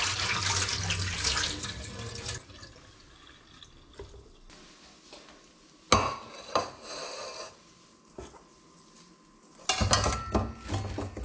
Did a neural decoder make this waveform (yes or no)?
no